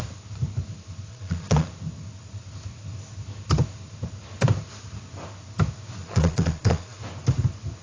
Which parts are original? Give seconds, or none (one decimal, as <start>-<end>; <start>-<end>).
0.0-1.1; 1.7-6.0; 7.0-7.8